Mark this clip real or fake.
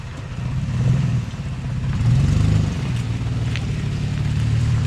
fake